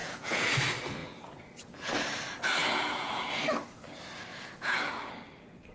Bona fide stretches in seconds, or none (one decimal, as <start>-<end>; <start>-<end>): 0.5-2.6; 3.3-4.3; 4.9-5.7